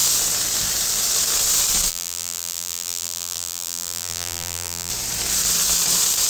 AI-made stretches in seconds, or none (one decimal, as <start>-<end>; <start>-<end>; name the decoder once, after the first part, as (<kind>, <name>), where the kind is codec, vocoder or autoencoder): 1.9-4.9 (vocoder, BigVGAN v2)

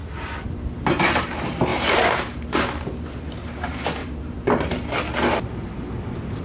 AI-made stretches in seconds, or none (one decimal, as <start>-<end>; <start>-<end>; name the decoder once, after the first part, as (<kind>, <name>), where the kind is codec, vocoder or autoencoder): 1.7-2.6 (vocoder, BigVGAN v2); 4.0-4.8

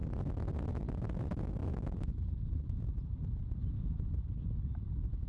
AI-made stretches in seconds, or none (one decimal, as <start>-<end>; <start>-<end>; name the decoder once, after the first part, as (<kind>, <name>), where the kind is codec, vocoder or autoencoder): 1.6-4.3 (vocoder, BigVGAN v2)

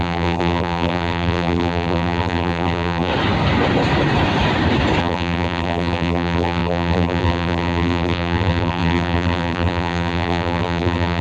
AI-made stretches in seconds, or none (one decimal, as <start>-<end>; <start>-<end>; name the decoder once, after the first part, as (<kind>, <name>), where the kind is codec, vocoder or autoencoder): 0.0-3.1 (vocoder, BigVGAN v2); 5.0-11.2

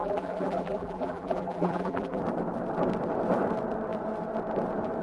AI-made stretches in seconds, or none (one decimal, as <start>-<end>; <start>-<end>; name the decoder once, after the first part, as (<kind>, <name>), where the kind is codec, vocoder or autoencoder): 0.0-2.2 (vocoder, BigVGAN v2)